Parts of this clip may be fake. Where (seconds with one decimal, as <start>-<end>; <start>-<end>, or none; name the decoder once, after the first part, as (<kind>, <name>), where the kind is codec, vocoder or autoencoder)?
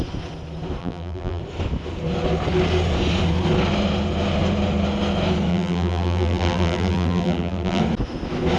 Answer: 0.8-1.4 (vocoder, BigVGAN v2); 5.5-7.8